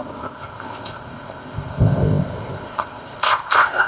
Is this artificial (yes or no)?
yes